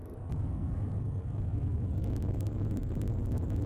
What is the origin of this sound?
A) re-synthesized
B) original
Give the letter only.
A